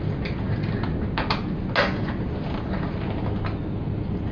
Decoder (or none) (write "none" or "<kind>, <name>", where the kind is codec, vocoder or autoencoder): none